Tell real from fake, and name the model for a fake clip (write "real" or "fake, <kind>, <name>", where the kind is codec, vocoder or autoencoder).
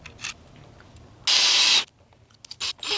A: real